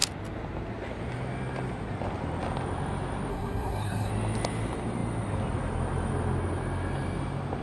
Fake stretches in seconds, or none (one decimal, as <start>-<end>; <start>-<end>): 3.3-4.1